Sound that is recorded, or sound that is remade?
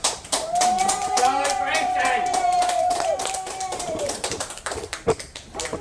remade